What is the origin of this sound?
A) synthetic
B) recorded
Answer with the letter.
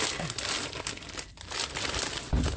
B